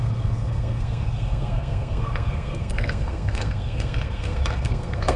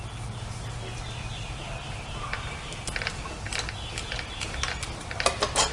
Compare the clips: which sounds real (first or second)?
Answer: second